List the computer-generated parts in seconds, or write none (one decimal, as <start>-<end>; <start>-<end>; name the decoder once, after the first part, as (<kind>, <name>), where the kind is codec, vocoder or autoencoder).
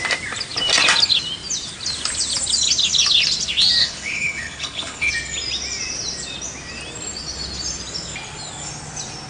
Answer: 3.8-5.1 (codec, HILCodec)